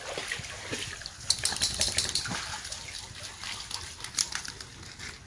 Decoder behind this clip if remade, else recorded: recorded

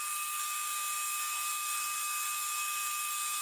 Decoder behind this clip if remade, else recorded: remade, codec, SNAC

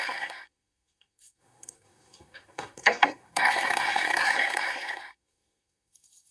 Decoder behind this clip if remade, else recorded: remade, codec, SNAC